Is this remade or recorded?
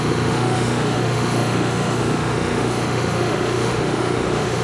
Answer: remade